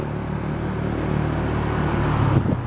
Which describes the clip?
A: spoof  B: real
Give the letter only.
B